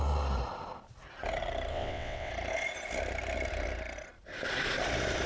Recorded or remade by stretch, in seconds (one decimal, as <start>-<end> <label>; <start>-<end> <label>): 0.0-1.7 recorded; 1.7-2.3 remade; 2.3-5.3 recorded